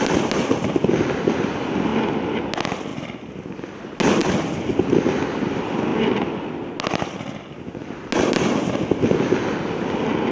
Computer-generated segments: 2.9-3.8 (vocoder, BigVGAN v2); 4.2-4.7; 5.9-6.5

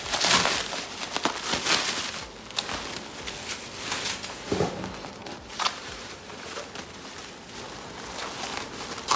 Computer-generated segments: 5.2-6.6 (vocoder, BigVGAN v2)

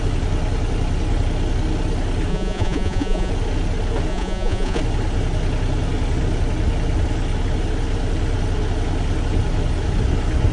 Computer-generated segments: 2.3-3.3 (vocoder, Vocos); 4.1-4.8